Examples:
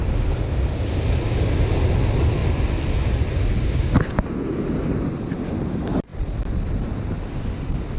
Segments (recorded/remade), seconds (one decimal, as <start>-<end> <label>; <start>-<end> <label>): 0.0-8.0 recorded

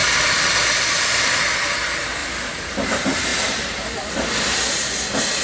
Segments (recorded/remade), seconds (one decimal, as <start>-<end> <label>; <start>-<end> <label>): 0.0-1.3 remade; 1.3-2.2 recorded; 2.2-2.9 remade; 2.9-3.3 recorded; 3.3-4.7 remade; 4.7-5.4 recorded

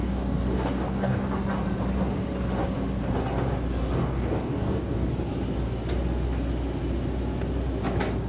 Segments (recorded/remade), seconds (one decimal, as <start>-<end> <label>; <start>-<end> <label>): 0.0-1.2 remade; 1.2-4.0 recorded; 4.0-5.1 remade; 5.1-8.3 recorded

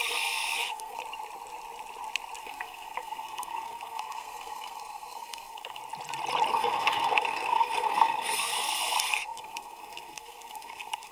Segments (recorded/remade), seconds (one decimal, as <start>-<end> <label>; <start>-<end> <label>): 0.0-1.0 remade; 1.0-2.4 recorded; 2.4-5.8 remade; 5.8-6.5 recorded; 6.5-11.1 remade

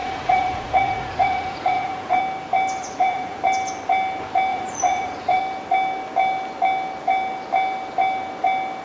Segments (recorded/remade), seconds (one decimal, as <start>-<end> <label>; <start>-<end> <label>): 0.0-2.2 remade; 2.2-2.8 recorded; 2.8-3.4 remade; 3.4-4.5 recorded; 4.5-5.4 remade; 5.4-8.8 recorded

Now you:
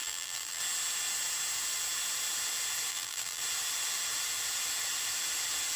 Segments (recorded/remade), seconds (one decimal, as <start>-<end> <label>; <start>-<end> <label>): 0.0-0.6 remade; 0.6-2.9 recorded; 2.9-3.4 remade; 3.4-5.8 recorded